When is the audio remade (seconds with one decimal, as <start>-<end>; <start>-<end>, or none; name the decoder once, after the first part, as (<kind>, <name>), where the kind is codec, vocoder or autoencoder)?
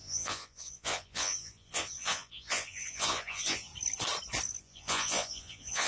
0.0-3.7 (vocoder, Vocos); 4.6-5.9